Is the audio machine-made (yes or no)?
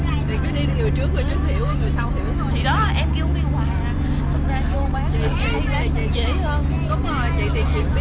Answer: no